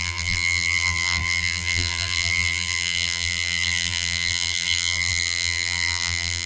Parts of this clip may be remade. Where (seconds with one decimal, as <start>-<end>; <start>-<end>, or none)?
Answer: 0.0-6.5